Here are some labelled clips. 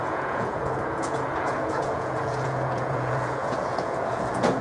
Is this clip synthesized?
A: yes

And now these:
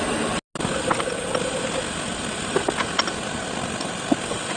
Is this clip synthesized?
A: no